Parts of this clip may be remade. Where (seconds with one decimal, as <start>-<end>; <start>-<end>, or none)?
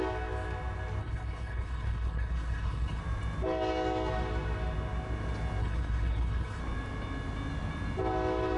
1.0-3.0; 5.6-6.6